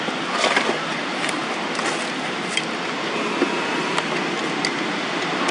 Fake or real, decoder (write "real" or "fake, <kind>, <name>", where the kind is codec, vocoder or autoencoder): real